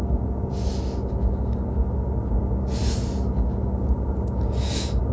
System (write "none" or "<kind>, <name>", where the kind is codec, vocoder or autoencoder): none